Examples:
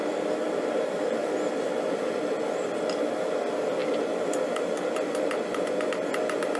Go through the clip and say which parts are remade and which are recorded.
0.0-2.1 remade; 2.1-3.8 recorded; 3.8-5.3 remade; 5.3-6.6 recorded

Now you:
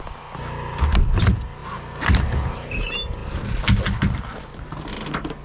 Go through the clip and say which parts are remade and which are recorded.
0.0-5.4 recorded

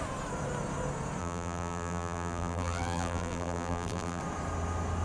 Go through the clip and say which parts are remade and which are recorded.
0.0-1.2 recorded; 1.2-4.2 remade; 4.2-5.0 recorded

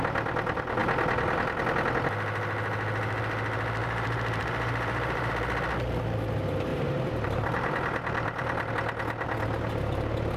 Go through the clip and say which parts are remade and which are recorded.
0.0-3.8 recorded; 3.8-5.3 remade; 5.3-6.7 recorded; 6.7-8.7 remade; 8.7-10.4 recorded

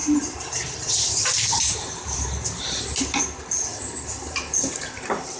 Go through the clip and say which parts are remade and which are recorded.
0.0-3.2 remade; 3.2-3.7 recorded; 3.7-5.4 remade

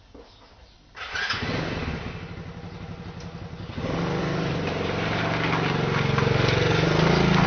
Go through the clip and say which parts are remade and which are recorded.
0.0-4.2 recorded; 4.2-5.2 remade; 5.2-7.5 recorded

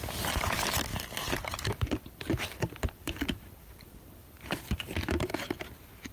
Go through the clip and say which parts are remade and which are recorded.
0.0-0.9 recorded; 0.9-3.9 remade; 3.9-6.1 recorded